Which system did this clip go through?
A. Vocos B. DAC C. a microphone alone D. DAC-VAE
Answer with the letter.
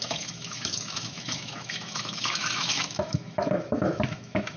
D